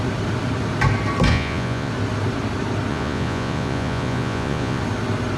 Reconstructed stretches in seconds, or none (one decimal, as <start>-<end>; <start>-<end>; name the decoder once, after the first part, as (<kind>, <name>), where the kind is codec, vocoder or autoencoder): 1.3-1.9 (vocoder, Vocos); 2.9-4.8